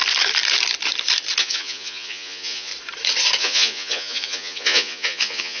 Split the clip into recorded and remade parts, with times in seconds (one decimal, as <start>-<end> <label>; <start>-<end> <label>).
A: 0.0-1.4 recorded; 1.4-2.7 remade; 2.7-3.4 recorded; 3.4-5.6 remade